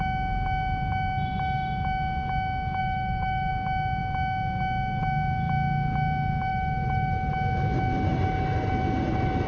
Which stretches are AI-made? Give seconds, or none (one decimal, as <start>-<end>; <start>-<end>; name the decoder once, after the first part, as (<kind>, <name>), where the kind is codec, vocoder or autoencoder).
2.8-3.5 (autoencoder, DAC-VAE); 6.5-7.3